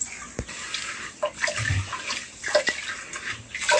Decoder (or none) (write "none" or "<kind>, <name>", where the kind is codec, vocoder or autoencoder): none